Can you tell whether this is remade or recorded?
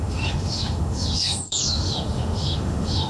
remade